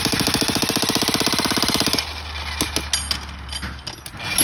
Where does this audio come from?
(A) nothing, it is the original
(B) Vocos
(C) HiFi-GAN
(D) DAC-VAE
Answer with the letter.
A